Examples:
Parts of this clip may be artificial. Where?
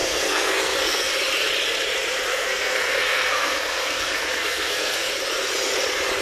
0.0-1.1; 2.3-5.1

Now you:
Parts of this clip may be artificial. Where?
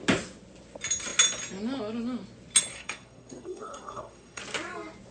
2.7-4.4